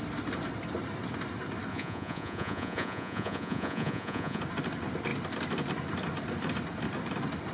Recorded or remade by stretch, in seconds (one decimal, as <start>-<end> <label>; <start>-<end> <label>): 0.0-1.7 recorded; 1.7-4.4 remade; 4.4-7.5 recorded